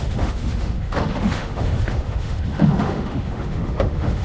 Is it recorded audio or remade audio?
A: remade